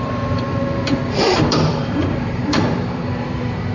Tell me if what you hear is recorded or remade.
remade